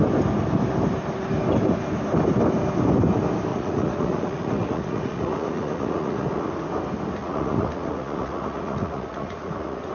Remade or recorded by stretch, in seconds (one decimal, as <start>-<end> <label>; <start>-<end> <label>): 0.0-3.5 recorded; 3.5-6.5 remade; 6.5-7.2 recorded; 7.2-9.9 remade